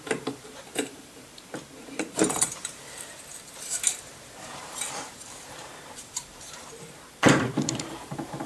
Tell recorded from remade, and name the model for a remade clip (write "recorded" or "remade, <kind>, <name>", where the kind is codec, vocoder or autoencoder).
remade, vocoder, BigVGAN v2